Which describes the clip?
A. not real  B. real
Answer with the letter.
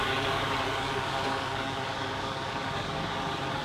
A